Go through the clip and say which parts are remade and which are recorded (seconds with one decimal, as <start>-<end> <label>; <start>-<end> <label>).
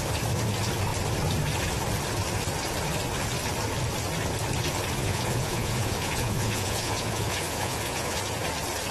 0.0-5.0 recorded; 5.0-8.2 remade; 8.2-8.9 recorded